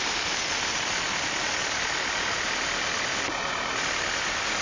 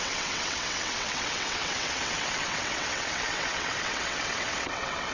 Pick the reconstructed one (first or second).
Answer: second